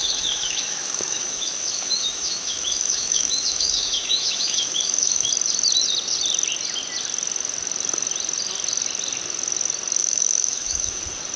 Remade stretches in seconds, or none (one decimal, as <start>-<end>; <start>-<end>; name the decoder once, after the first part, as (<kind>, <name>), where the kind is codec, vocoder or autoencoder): 0.0-5.3 (autoencoder, DAC-VAE); 10.0-11.0